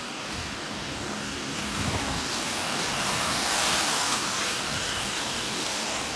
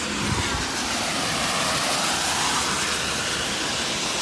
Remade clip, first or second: first